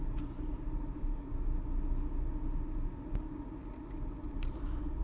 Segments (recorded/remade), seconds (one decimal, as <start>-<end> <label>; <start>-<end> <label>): 0.0-1.3 remade; 1.3-4.3 recorded; 4.3-5.0 remade

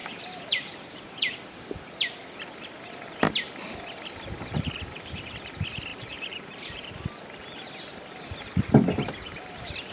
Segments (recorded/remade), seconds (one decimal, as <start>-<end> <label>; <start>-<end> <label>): 0.0-1.5 remade; 1.5-5.9 recorded; 5.9-6.9 remade; 6.9-9.9 recorded

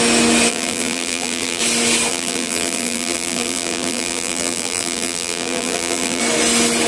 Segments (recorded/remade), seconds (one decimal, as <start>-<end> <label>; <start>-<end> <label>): 0.0-0.5 recorded; 0.5-1.6 remade; 1.6-2.1 recorded; 2.1-6.2 remade; 6.2-6.9 recorded

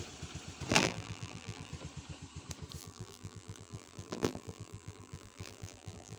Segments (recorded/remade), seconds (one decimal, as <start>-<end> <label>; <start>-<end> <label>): 0.0-0.7 recorded; 0.7-1.7 remade; 1.7-2.8 recorded; 2.8-6.2 remade

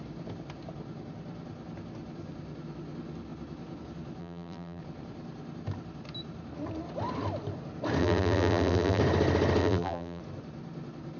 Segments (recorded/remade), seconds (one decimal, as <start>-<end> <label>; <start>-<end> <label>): 0.0-4.2 recorded; 4.2-4.8 remade; 4.8-8.0 recorded; 8.0-9.0 remade; 9.0-9.6 recorded; 9.6-10.2 remade; 10.2-11.2 recorded

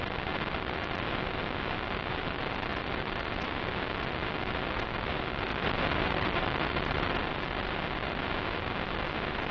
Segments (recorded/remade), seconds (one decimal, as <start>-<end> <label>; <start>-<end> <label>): 0.0-5.5 recorded; 5.5-7.2 remade; 7.2-9.5 recorded